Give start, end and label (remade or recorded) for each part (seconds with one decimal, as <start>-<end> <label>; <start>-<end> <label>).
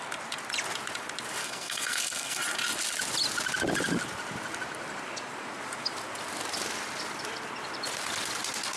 0.0-1.4 recorded; 1.4-2.4 remade; 2.4-8.8 recorded